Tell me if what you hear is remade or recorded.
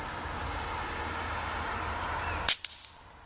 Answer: recorded